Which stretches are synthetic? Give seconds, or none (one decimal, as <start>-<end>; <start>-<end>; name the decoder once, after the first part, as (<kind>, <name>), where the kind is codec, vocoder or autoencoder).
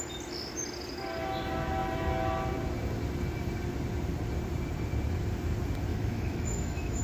5.9-7.0 (autoencoder, DAC-VAE)